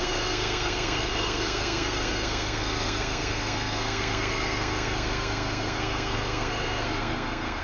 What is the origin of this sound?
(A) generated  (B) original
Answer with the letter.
A